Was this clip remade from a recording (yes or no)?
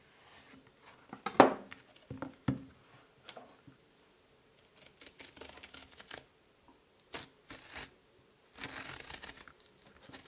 no